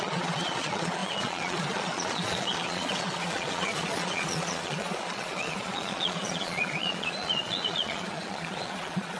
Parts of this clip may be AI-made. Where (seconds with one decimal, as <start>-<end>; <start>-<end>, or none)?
0.0-9.2